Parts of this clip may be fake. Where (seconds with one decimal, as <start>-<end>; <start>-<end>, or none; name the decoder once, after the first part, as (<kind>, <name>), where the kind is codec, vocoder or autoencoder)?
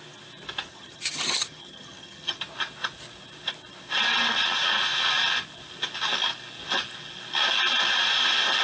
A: 0.7-2.4 (vocoder, HiFi-GAN)